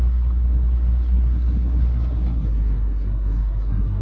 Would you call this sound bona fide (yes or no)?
no